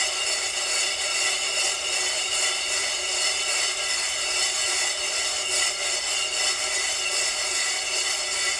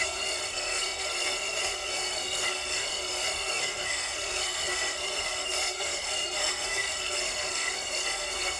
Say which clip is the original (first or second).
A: first